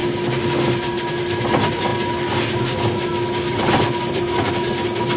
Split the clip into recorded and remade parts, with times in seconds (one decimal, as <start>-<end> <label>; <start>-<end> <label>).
0.0-5.2 recorded